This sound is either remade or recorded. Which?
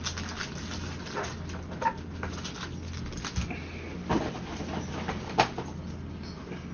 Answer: recorded